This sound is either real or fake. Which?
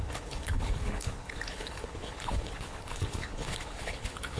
fake